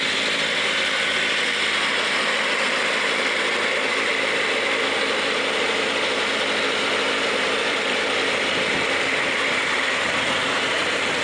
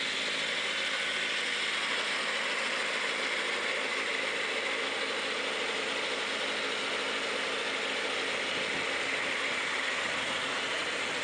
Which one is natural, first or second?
second